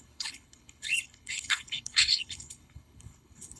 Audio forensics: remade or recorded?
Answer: remade